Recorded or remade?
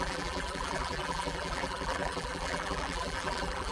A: remade